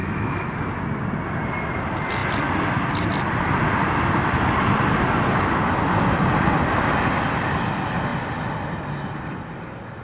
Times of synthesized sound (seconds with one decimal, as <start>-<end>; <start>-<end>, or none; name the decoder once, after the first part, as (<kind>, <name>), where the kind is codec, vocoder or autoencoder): 0.0-0.5 (autoencoder, DAC-VAE)